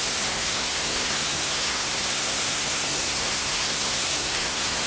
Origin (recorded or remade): remade